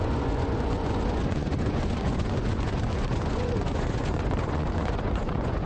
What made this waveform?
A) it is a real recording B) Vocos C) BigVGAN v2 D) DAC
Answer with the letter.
B